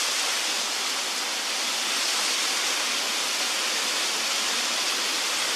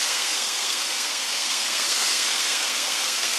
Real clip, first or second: first